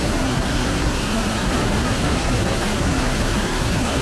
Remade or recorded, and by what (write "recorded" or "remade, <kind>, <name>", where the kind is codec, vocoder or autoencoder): remade, codec, SNAC